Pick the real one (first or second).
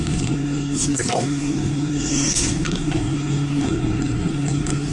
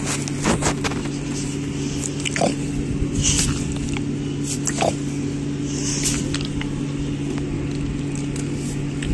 second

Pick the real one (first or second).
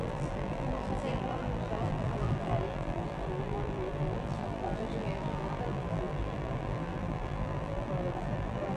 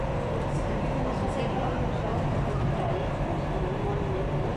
second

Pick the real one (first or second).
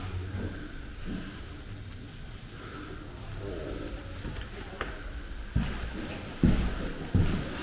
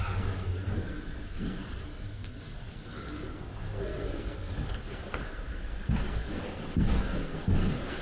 first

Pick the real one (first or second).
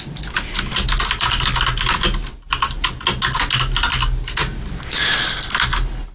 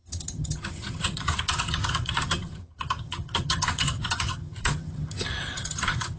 first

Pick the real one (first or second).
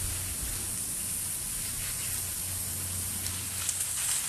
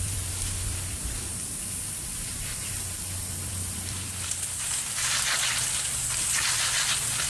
first